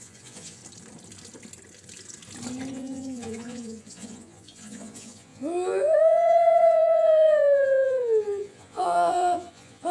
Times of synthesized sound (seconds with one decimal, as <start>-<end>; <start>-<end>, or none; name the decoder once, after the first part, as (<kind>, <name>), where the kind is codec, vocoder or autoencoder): 0.0-0.6 (vocoder, Vocos); 2.7-9.9